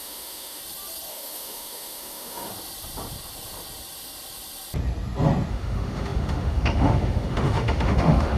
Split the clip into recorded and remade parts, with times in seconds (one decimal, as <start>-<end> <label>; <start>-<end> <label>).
0.0-0.6 remade; 0.6-1.1 recorded; 1.1-2.5 remade; 2.5-5.5 recorded; 5.5-8.4 remade

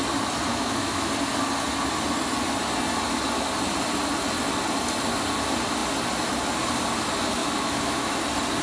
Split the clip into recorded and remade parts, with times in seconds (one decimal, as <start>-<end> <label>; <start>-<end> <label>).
0.0-0.5 recorded; 0.5-1.1 remade; 1.1-7.4 recorded; 7.4-8.2 remade; 8.2-8.6 recorded

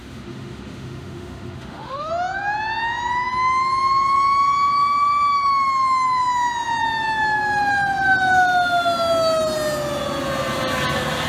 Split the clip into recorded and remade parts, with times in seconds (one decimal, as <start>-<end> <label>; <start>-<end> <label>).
0.0-2.1 remade; 2.1-11.3 recorded

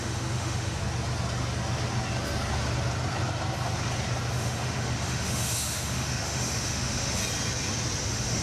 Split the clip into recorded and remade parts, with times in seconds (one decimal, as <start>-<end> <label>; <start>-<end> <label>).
0.0-0.8 remade; 0.8-4.3 recorded; 4.3-7.2 remade; 7.2-8.0 recorded; 8.0-8.4 remade

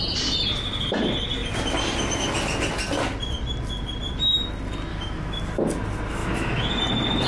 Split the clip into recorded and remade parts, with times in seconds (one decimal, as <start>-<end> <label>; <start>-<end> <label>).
0.0-4.9 recorded; 4.9-5.4 remade; 5.4-6.2 recorded; 6.2-6.8 remade; 6.8-7.3 recorded